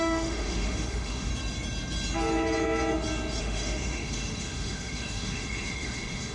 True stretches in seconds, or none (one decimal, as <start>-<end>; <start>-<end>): 1.3-3.4